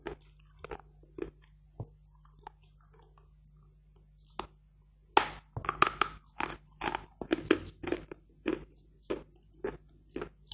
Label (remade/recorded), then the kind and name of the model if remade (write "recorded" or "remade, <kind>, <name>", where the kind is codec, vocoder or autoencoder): recorded